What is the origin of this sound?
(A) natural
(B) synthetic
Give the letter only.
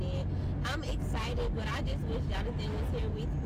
A